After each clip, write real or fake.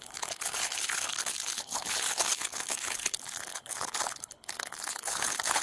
fake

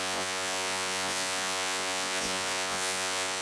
fake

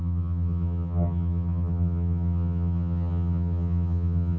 fake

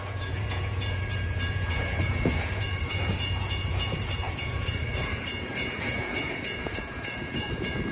fake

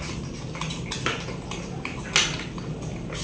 real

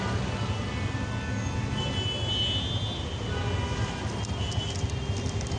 real